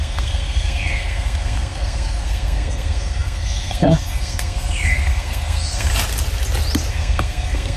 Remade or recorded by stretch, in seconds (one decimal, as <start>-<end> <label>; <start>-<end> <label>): 0.0-5.9 remade; 5.9-6.9 recorded; 6.9-7.8 remade